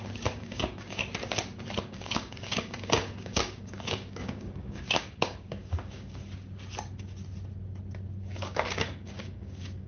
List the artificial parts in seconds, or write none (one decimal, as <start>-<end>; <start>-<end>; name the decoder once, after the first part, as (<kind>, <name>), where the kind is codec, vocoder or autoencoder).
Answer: 0.0-1.0 (codec, DAC); 1.8-6.2; 8.2-9.9